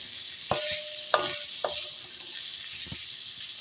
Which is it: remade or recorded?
recorded